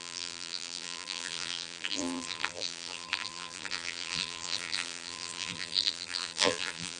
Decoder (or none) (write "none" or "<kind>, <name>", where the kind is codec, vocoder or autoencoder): vocoder, BigVGAN v2